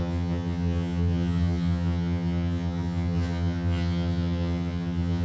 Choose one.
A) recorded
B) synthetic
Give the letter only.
B